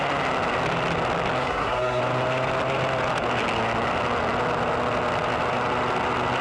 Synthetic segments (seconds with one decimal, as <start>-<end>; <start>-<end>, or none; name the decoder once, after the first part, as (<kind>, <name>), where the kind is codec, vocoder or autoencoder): 1.4-2.0 (codec, SNAC)